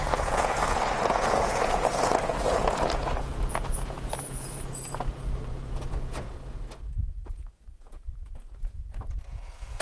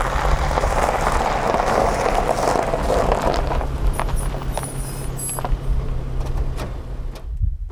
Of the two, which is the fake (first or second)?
first